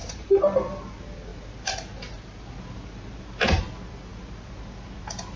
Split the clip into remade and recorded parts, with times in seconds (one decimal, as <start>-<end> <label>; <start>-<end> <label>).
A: 0.0-0.8 remade; 0.8-5.4 recorded